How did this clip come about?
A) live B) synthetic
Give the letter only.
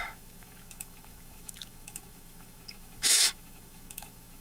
B